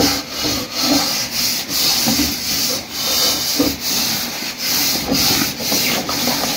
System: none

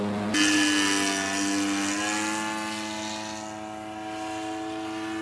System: none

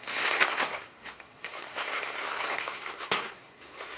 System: codec, SNAC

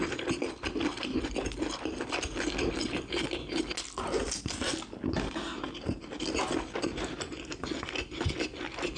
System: none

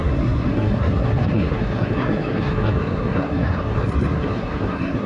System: codec, SNAC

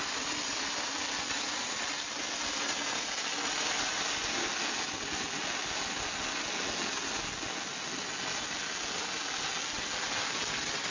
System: none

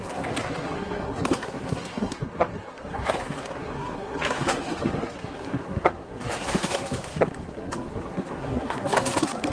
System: codec, SNAC